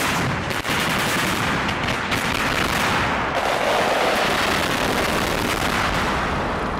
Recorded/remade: recorded